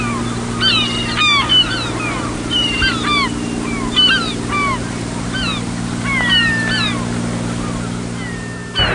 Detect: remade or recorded recorded